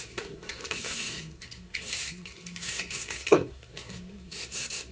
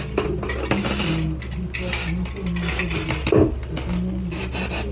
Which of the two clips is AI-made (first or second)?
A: first